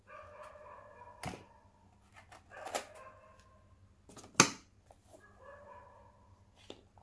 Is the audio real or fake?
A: real